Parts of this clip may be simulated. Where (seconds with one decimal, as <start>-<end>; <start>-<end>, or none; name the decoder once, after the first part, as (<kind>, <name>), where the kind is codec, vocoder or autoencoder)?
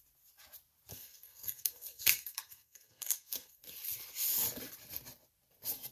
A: 0.9-3.6 (codec, SNAC)